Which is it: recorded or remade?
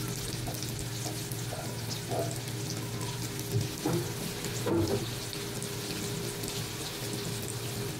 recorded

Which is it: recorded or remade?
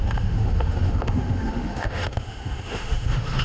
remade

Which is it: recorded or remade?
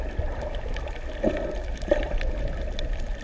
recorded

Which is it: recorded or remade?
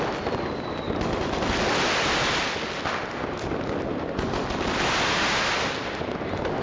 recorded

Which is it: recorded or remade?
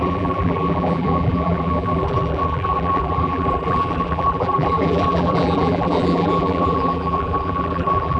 remade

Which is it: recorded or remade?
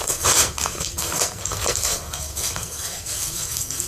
remade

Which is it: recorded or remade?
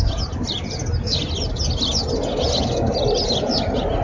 recorded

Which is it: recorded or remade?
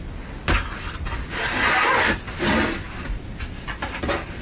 recorded